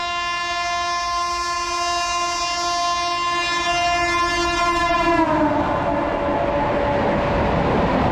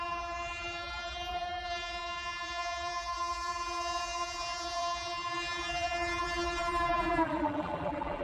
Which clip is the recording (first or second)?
first